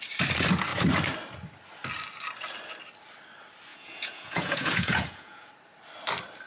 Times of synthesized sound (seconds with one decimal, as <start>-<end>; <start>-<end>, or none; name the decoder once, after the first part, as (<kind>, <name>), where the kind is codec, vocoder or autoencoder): 3.7-5.5 (vocoder, Vocos)